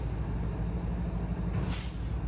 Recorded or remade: recorded